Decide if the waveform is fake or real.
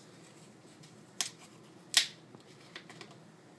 real